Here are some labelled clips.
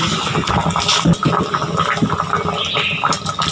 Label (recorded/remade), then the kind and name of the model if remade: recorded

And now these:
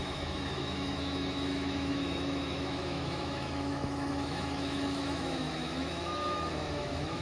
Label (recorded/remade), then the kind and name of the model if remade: remade, autoencoder, DAC-VAE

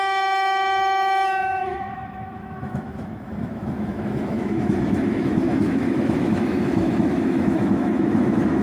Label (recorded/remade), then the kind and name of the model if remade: remade, autoencoder, DAC-VAE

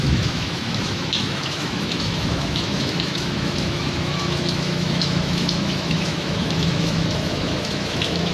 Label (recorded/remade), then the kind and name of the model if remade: remade, autoencoder, DAC-VAE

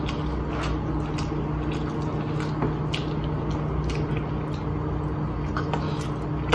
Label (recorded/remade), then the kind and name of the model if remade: recorded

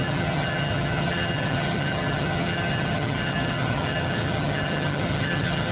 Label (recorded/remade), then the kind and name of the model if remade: remade, vocoder, HiFi-GAN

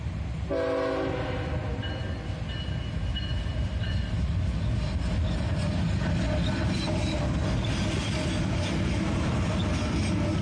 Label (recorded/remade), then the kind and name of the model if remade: recorded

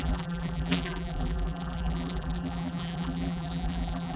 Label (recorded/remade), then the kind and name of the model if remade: remade, vocoder, BigVGAN v2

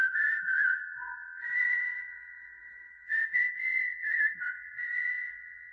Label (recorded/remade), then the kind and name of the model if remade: remade, vocoder, WaveNeXt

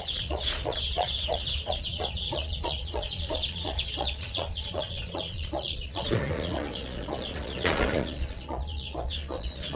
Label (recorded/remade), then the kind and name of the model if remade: remade, vocoder, Vocos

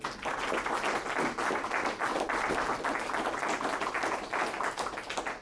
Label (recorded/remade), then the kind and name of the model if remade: recorded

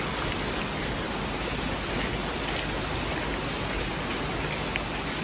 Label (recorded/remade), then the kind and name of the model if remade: recorded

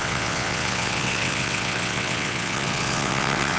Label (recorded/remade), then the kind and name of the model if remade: remade, vocoder, WaveNeXt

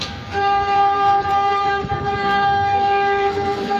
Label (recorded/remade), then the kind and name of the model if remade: remade, codec, SNAC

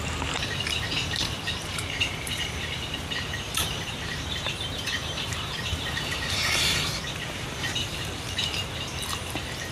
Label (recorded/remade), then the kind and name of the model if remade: remade, vocoder, BigVGAN v2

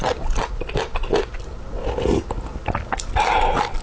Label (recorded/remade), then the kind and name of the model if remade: recorded